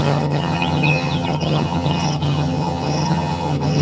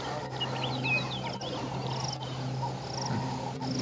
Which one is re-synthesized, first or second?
first